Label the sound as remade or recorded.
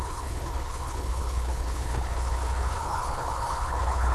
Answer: remade